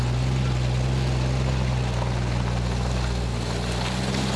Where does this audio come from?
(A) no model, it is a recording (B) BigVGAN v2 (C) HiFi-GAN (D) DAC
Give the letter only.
A